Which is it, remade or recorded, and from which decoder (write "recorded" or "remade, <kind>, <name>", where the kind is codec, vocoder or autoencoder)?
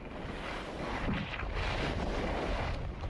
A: recorded